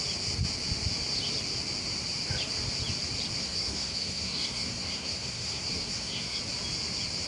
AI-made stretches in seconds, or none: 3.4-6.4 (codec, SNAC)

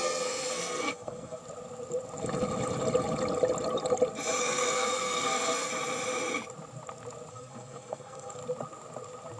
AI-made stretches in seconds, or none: 0.0-1.4 (codec, SNAC); 4.4-5.7; 7.3-8.4

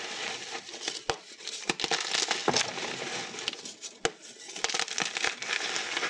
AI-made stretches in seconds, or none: none

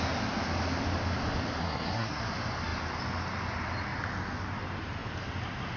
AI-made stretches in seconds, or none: 1.6-2.2 (codec, SNAC)